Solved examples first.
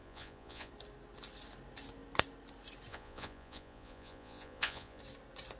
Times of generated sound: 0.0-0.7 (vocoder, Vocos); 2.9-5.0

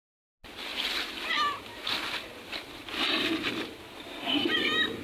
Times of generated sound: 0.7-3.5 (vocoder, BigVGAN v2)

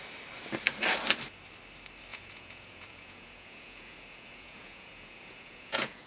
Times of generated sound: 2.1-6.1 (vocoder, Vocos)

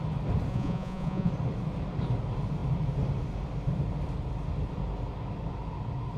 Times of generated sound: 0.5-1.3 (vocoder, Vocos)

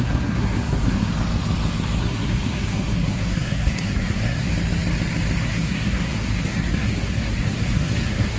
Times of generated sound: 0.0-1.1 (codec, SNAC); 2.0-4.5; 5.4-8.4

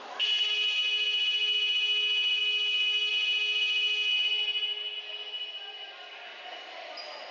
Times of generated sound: 2.4-3.1 (autoencoder, DAC-VAE)

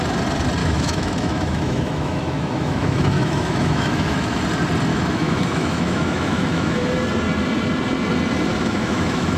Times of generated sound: 0.6-4.4 (autoencoder, DAC-VAE); 4.9-6.9; 8.5-9.4